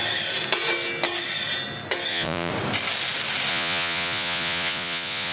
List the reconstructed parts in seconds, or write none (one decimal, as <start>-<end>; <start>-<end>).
2.1-2.5; 3.5-5.3